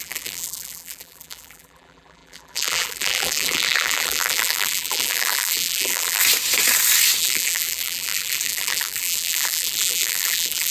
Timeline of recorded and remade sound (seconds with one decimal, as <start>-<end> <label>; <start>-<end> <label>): 0.0-6.2 remade; 6.2-7.2 recorded; 7.2-10.7 remade